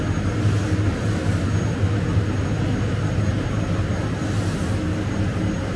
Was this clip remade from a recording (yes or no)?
no